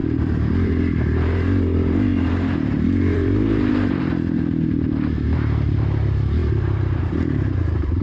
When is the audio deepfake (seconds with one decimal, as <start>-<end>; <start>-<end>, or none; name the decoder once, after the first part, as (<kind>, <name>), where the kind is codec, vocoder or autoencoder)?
0.0-8.0 (vocoder, BigVGAN v2)